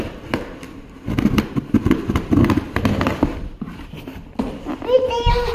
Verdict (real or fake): real